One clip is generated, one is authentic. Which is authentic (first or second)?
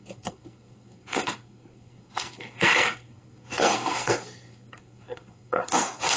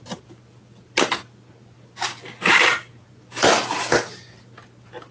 second